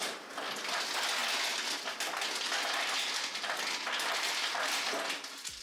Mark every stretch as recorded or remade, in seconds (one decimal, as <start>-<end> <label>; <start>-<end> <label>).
0.0-5.6 recorded